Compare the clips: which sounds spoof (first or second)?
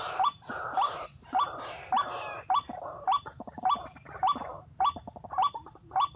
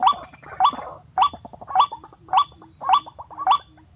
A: first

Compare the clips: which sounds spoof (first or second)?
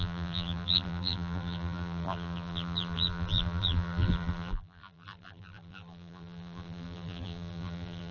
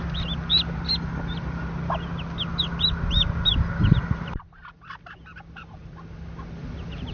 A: first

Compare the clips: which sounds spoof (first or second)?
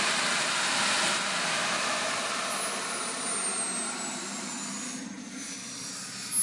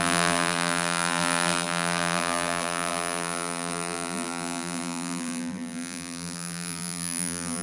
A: second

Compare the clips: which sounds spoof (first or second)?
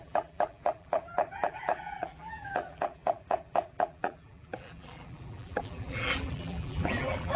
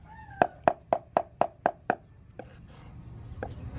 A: first